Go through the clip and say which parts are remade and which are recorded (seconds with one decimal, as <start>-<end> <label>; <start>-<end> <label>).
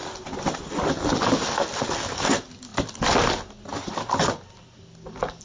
0.0-5.4 recorded